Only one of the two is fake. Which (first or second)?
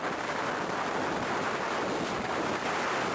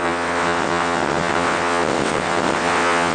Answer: second